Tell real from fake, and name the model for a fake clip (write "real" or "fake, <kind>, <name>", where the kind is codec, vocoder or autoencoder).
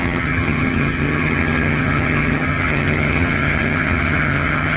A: fake, vocoder, HiFi-GAN